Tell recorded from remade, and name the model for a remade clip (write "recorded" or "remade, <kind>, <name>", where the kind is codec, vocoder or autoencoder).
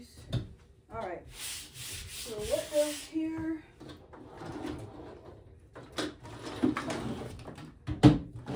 recorded